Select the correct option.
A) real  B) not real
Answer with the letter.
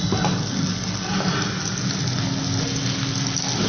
A